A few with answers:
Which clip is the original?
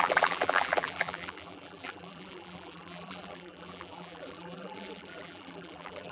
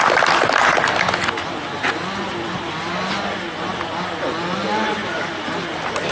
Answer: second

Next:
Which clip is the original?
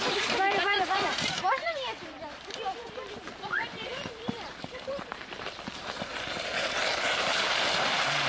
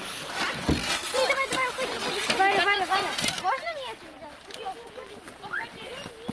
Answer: second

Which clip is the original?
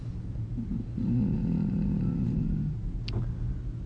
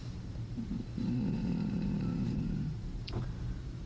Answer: first